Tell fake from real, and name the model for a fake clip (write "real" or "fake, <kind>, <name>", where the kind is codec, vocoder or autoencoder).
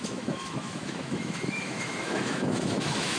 fake, autoencoder, DAC-VAE